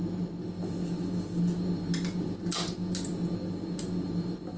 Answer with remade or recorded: recorded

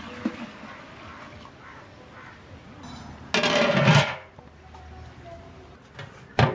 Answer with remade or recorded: recorded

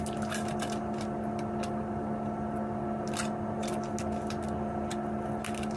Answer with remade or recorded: recorded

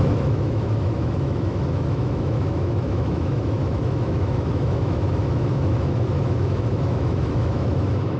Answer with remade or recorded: remade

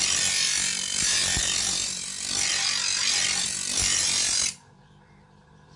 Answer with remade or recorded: remade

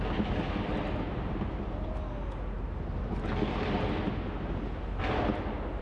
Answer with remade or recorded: recorded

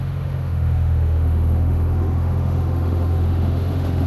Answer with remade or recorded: remade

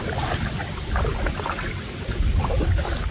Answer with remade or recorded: recorded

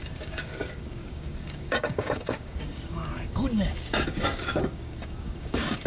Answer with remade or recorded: remade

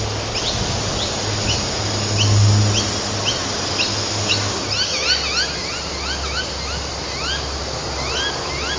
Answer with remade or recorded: recorded